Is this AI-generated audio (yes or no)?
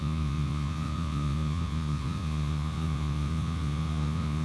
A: yes